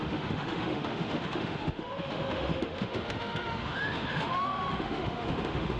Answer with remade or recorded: remade